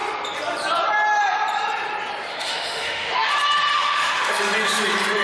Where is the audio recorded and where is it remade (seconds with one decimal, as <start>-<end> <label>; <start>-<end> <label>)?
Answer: 0.0-2.3 recorded; 2.3-3.3 remade; 3.3-3.7 recorded; 3.7-4.3 remade; 4.3-5.2 recorded